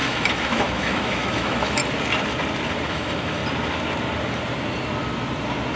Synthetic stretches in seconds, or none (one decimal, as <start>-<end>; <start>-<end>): 0.0-1.8; 2.9-3.4